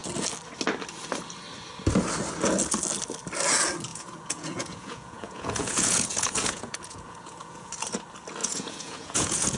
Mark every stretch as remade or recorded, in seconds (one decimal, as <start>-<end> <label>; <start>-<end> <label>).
0.0-3.9 recorded; 3.9-7.7 remade; 7.7-8.4 recorded; 8.4-9.6 remade